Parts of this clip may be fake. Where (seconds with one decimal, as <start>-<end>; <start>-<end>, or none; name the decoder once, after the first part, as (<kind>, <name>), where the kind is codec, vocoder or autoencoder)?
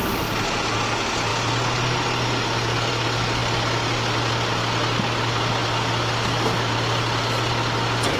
none